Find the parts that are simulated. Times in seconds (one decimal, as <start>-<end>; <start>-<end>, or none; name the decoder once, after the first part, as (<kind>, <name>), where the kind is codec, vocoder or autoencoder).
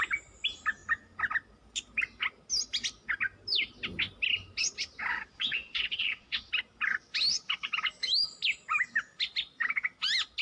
5.1-6.5 (vocoder, WaveNeXt)